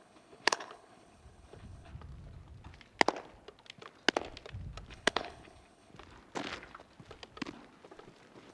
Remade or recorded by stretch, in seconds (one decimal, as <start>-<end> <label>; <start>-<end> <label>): 0.0-1.9 remade; 1.9-4.9 recorded; 4.9-5.9 remade; 5.9-8.5 recorded